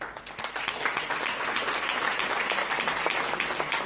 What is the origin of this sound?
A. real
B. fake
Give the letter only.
A